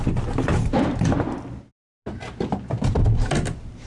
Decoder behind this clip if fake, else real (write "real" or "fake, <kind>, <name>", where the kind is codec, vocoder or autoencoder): real